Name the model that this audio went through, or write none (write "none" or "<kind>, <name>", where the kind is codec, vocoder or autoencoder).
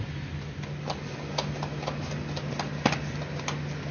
none